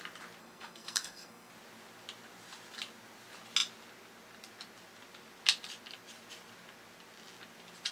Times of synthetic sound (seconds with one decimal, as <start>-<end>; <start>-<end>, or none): 0.4-1.5